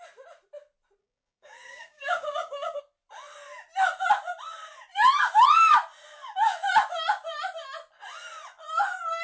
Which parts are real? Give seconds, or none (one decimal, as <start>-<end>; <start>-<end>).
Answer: 0.0-1.0; 2.8-9.2